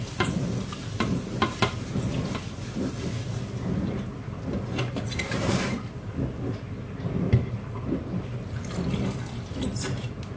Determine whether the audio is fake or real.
real